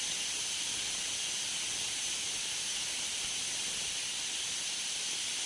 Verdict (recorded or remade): recorded